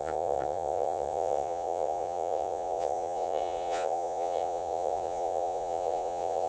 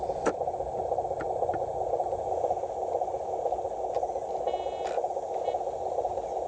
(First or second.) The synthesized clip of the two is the first